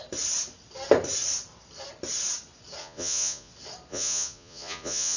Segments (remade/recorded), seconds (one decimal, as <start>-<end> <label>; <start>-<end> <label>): 0.0-2.8 recorded; 2.8-3.5 remade; 3.5-3.9 recorded; 3.9-5.2 remade